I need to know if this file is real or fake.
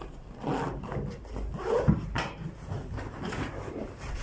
real